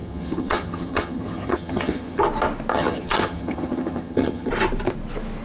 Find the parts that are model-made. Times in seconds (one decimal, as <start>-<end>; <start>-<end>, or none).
0.0-2.2; 2.7-4.5